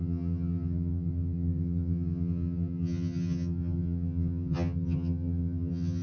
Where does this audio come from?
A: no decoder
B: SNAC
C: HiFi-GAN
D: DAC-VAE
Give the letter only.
C